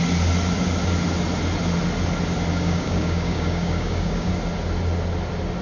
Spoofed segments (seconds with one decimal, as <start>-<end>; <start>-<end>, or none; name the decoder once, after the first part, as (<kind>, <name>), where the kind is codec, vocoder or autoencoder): 2.5-4.3 (codec, DAC)